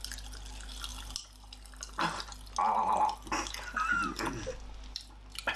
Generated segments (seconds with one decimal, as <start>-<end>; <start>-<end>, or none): none